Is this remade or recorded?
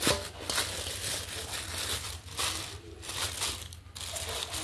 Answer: recorded